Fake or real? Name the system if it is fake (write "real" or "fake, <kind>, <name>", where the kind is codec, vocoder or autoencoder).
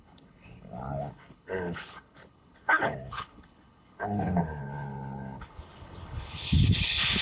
fake, codec, HILCodec